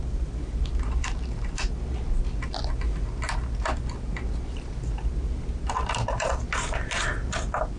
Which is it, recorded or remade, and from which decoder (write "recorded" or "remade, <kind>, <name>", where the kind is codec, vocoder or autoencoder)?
recorded